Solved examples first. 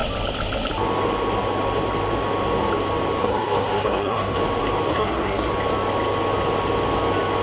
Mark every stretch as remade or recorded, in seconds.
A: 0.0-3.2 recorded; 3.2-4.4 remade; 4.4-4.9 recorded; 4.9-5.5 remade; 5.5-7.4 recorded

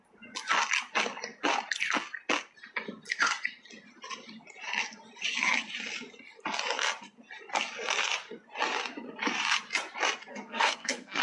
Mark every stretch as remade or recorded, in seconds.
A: 0.0-10.3 recorded; 10.3-11.2 remade

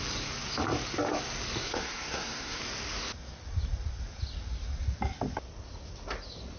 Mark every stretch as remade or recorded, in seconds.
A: 0.0-1.6 recorded; 1.6-2.6 remade; 2.6-6.6 recorded

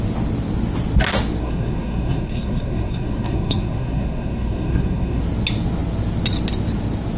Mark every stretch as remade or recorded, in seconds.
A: 0.0-1.4 recorded; 1.4-5.2 remade; 5.2-7.2 recorded

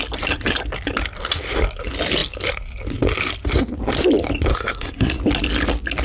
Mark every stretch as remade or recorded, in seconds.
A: 0.0-4.5 recorded; 4.5-5.2 remade; 5.2-6.0 recorded